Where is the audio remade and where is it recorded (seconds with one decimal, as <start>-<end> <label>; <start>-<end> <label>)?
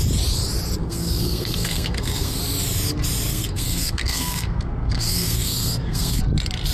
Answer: 0.0-0.8 recorded; 0.8-2.4 remade; 2.4-3.3 recorded; 3.3-6.2 remade; 6.2-6.7 recorded